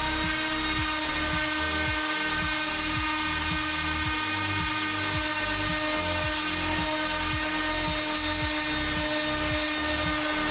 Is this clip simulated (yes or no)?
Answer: no